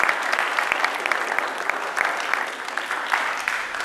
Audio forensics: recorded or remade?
recorded